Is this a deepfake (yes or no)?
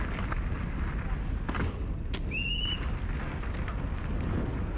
no